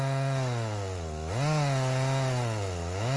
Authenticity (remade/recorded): recorded